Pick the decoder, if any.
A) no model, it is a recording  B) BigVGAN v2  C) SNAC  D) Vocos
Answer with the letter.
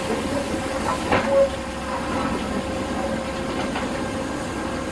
A